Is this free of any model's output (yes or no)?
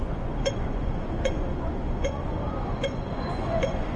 no